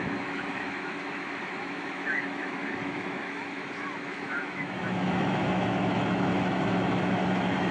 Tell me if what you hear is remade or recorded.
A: remade